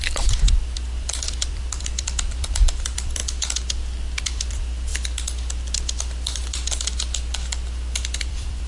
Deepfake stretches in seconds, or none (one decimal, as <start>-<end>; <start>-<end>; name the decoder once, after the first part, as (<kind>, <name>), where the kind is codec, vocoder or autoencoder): 0.0-3.2 (vocoder, BigVGAN v2); 4.2-4.9; 8.2-8.7